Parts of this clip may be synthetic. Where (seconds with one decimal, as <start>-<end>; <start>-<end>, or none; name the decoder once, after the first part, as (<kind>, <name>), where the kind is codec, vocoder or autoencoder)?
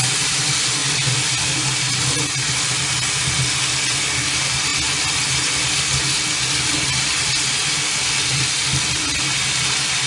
none